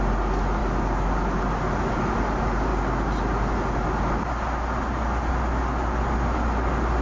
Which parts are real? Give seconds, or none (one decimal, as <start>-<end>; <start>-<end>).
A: 0.0-7.0